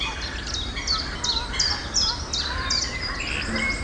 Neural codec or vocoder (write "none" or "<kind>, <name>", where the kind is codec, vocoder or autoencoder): none